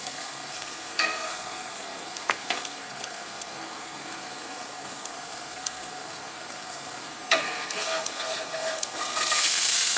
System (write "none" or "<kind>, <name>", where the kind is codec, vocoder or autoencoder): codec, SNAC